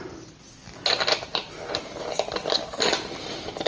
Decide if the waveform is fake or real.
real